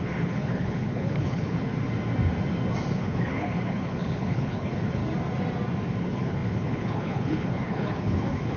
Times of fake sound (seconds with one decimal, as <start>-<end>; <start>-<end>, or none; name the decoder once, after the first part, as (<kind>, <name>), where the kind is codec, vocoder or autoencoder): 0.0-1.7 (codec, HILCodec); 2.9-5.0; 6.0-8.6